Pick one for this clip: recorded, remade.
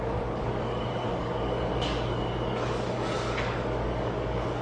remade